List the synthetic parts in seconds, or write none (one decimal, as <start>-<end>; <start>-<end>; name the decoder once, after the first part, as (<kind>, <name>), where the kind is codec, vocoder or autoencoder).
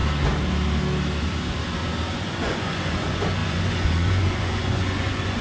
2.1-5.4 (vocoder, Vocos)